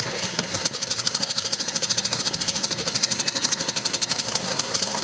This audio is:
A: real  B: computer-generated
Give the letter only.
B